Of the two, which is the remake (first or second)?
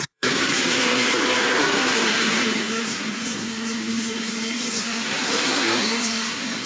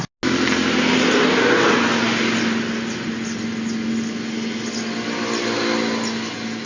first